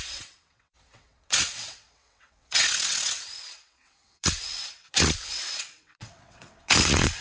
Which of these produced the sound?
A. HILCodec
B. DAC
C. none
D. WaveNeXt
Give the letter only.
D